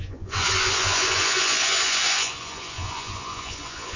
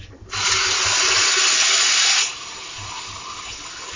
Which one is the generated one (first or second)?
first